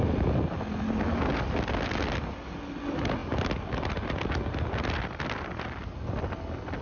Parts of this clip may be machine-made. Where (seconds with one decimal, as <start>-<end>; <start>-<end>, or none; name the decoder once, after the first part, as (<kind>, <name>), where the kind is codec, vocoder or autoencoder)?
none